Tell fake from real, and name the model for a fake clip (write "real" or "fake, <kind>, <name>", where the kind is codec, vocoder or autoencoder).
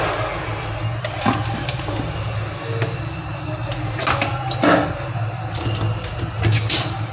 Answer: real